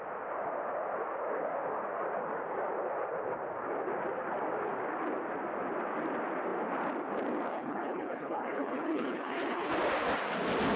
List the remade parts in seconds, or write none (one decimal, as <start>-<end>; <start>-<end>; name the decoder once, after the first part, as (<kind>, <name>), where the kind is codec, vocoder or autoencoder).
7.5-9.7 (codec, HILCodec)